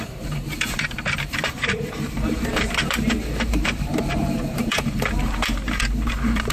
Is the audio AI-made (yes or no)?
yes